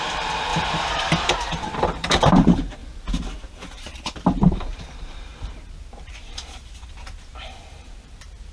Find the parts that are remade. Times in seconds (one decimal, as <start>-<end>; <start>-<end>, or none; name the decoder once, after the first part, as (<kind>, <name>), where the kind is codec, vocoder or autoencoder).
0.0-2.8 (vocoder, BigVGAN v2); 3.5-8.5